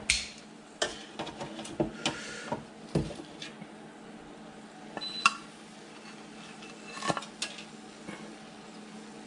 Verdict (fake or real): real